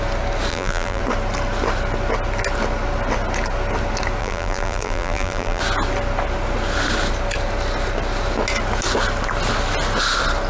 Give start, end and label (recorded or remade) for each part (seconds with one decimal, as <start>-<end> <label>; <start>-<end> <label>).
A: 0.0-0.5 recorded; 0.5-1.0 remade; 1.0-4.2 recorded; 4.2-5.6 remade; 5.6-10.5 recorded